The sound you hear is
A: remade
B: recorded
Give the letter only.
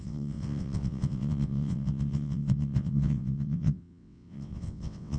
A